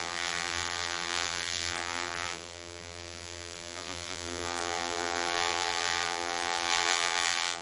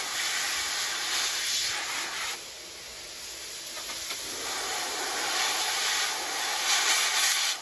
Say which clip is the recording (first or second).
second